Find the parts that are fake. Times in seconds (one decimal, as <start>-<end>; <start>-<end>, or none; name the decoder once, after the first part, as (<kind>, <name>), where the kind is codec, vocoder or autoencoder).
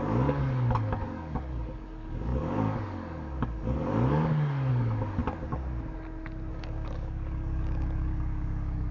0.0-5.2 (codec, DAC); 6.5-8.9